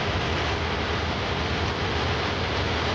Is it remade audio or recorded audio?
recorded